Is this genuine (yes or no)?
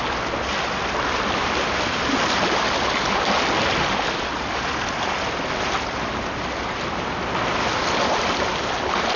yes